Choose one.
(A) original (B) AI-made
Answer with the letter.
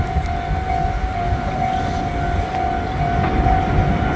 A